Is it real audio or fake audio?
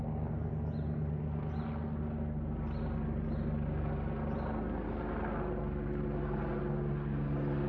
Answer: real